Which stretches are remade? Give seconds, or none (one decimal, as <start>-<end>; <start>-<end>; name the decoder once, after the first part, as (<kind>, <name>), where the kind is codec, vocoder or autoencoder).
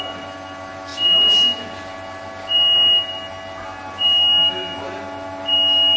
none